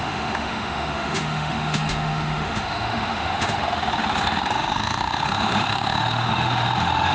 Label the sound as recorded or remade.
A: remade